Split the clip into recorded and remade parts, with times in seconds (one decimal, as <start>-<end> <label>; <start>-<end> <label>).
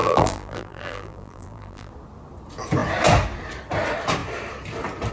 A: 0.0-1.9 remade; 1.9-5.1 recorded